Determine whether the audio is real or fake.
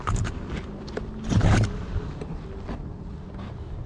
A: fake